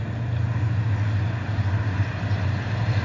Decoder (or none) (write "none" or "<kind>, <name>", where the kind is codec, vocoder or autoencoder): none